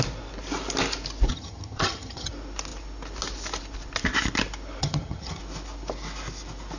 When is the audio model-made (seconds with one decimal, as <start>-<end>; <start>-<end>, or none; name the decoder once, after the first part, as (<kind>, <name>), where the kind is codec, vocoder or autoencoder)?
1.3-2.3 (vocoder, HiFi-GAN); 4.8-5.4